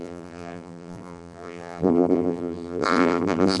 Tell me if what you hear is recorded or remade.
remade